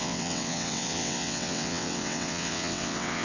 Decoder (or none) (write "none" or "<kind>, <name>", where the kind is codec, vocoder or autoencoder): vocoder, WaveNeXt